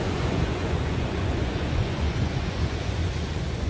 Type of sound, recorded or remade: remade